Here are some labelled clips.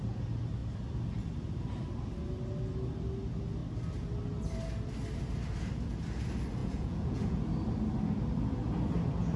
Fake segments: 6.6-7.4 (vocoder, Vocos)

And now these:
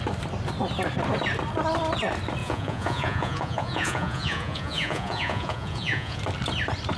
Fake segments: 2.4-6.2 (vocoder, Vocos)